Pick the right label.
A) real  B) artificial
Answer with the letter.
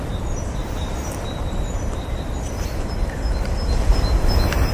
A